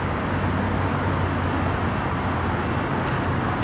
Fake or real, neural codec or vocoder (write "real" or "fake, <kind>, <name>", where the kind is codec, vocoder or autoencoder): real